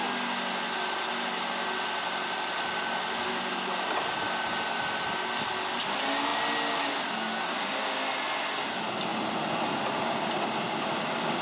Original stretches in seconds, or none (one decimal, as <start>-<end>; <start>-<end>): 0.0-11.4